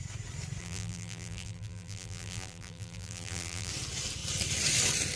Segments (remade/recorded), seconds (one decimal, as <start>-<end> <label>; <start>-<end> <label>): 0.0-0.6 recorded; 0.6-3.7 remade; 3.7-5.2 recorded